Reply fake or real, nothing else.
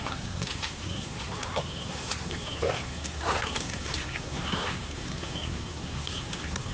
fake